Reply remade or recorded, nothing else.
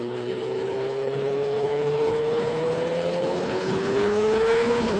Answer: remade